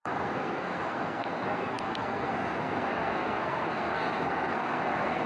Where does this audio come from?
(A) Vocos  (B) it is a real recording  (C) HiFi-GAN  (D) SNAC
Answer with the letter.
D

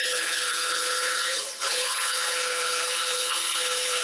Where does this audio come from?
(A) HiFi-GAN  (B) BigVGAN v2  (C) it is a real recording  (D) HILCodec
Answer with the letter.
D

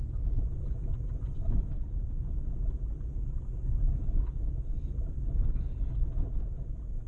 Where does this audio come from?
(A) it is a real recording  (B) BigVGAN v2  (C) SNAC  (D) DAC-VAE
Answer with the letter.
A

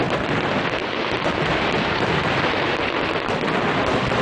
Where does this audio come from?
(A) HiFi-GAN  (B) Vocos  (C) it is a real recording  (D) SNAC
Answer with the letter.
C